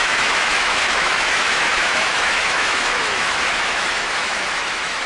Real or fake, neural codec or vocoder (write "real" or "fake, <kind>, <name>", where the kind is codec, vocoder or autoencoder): fake, autoencoder, DAC-VAE